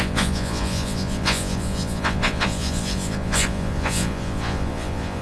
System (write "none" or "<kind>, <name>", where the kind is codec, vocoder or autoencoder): vocoder, Vocos